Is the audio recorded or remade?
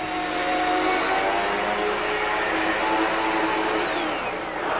recorded